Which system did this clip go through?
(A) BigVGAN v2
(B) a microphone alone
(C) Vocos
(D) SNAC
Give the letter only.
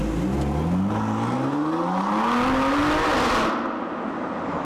B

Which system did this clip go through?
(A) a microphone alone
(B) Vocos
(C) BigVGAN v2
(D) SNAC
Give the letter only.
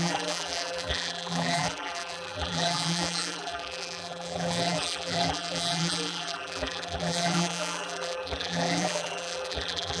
C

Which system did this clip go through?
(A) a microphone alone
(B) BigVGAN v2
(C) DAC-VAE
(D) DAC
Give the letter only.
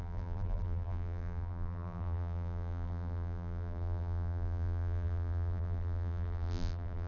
B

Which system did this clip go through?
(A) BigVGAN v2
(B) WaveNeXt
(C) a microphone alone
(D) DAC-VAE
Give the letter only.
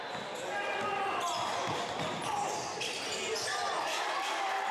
C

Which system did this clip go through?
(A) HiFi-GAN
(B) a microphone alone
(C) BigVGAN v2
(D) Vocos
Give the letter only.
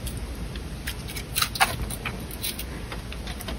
B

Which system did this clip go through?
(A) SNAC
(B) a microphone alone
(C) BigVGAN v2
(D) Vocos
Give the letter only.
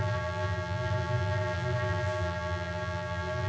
C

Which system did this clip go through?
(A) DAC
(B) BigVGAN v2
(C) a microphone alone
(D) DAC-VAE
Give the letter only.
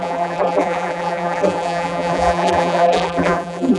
B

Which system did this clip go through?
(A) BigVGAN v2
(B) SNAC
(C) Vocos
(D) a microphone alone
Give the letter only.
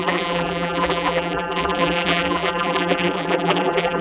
A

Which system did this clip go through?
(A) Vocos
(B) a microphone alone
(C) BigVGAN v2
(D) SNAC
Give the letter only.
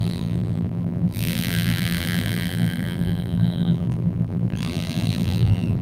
C